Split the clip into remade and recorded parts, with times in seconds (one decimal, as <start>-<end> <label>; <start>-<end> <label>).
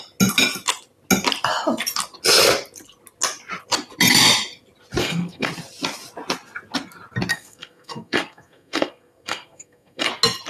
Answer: 0.0-5.0 recorded; 5.0-5.5 remade; 5.5-7.3 recorded; 7.3-10.1 remade; 10.1-10.5 recorded